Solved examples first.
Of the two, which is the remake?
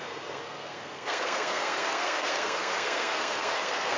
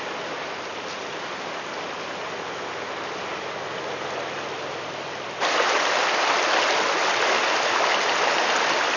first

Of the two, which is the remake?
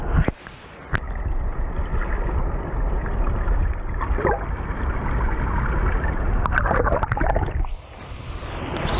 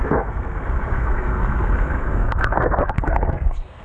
second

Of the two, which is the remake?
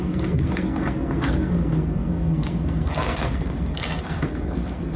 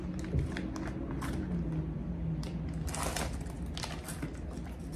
first